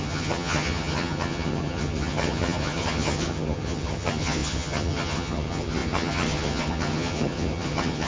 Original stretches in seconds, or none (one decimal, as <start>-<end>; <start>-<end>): none